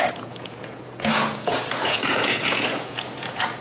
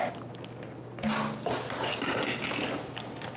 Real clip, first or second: second